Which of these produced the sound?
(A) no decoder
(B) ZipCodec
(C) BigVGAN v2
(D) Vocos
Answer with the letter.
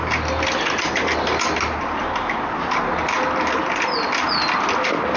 A